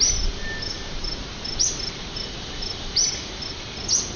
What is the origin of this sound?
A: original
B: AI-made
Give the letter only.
A